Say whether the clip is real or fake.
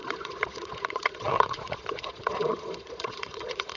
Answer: fake